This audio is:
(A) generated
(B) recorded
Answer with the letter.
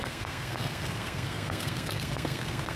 A